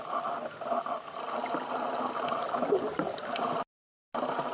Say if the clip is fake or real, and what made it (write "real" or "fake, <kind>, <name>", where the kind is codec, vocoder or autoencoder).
real